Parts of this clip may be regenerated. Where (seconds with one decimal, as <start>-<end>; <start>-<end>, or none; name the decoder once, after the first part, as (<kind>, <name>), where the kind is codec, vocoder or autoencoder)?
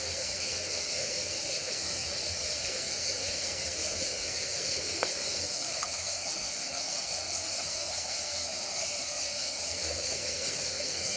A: 0.0-11.2 (codec, SNAC)